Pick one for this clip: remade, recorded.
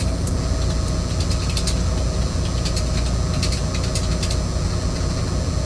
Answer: recorded